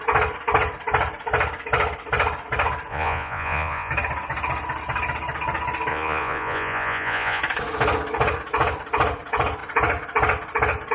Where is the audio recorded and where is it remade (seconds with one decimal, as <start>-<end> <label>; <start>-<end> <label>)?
0.0-2.9 recorded; 2.9-3.9 remade; 3.9-5.9 recorded; 5.9-7.4 remade; 7.4-10.9 recorded